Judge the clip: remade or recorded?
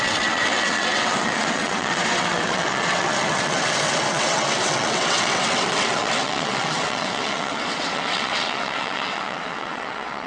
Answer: remade